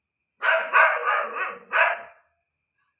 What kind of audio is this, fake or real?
real